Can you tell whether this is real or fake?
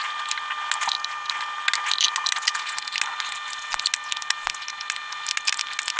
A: real